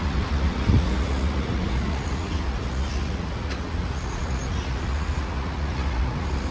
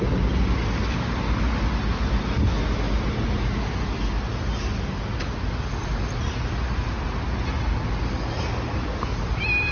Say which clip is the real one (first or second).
second